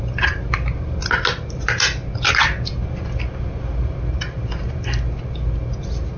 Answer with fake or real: real